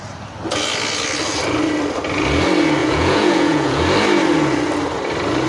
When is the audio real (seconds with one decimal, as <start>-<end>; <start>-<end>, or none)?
0.0-2.8; 3.8-5.5